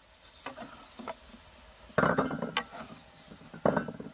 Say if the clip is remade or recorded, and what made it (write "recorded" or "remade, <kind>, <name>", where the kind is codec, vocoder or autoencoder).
recorded